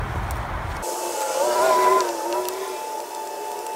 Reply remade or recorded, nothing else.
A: recorded